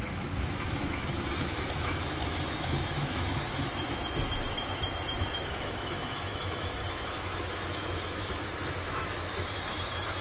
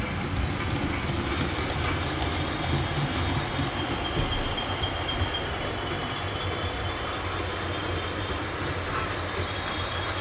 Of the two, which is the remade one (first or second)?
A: first